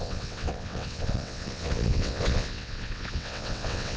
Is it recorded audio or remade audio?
remade